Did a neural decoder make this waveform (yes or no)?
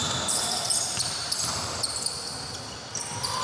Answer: no